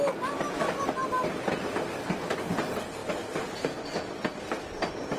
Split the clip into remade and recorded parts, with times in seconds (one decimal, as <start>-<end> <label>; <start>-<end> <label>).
0.0-5.2 recorded